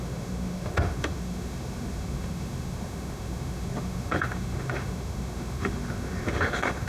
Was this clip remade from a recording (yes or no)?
yes